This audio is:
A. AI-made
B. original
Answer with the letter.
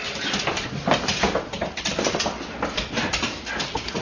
B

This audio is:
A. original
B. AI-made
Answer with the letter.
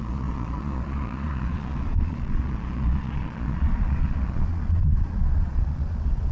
B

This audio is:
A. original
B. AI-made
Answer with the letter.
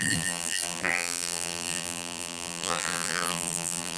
B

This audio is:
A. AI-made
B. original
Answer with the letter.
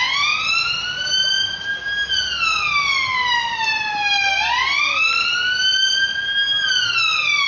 B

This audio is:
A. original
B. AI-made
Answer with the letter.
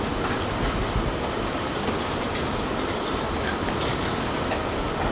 A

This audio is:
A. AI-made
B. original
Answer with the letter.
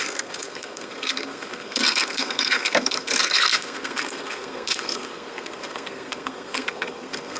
A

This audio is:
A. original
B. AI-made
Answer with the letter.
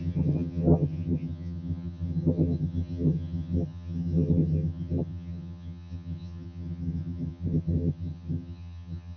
B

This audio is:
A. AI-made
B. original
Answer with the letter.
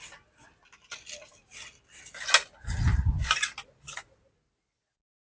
B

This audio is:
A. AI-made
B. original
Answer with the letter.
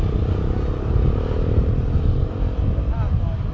B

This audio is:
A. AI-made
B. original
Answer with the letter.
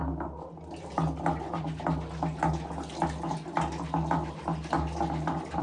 B